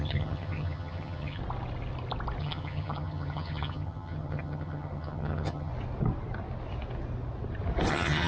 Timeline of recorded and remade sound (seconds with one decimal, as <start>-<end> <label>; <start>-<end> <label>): 0.0-1.4 remade; 1.4-2.4 recorded; 2.4-5.7 remade; 5.7-7.9 recorded; 7.9-8.3 remade